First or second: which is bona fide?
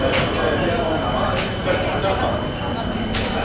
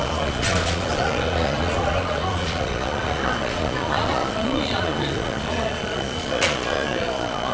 first